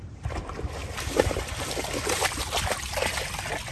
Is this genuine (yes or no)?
yes